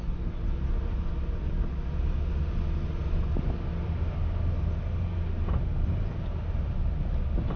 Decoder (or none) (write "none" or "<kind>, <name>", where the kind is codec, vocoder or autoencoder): none